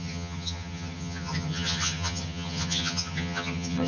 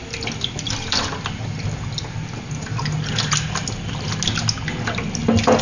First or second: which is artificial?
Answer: first